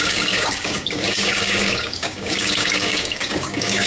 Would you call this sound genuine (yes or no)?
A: no